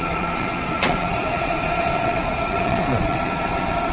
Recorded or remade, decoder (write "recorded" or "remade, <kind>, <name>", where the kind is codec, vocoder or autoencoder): remade, vocoder, Vocos